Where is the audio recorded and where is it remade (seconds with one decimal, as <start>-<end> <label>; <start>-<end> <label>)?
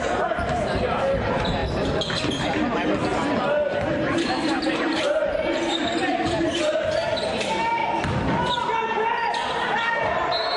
0.0-1.6 remade; 1.6-3.8 recorded; 3.8-7.8 remade; 7.8-9.9 recorded; 9.9-10.6 remade